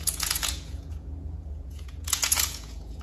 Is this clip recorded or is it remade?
remade